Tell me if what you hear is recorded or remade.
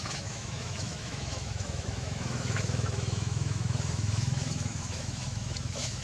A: remade